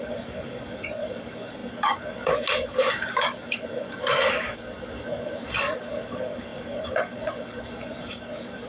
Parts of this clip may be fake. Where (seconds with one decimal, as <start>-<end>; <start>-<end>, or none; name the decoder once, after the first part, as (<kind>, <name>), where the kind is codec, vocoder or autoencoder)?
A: 0.0-8.7 (codec, DAC)